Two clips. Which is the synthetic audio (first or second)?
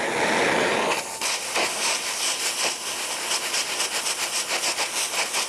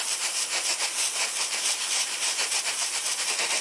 second